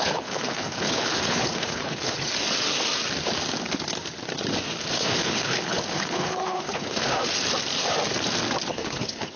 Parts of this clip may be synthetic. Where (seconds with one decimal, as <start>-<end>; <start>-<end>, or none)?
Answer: 0.0-2.3; 4.9-7.2; 8.7-9.4